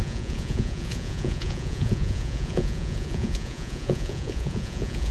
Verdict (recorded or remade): remade